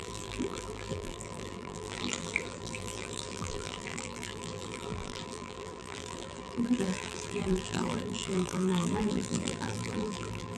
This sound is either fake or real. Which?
fake